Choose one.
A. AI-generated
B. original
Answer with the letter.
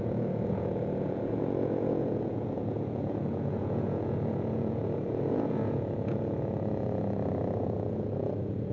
A